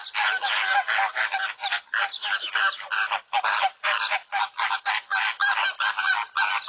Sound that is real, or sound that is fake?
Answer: real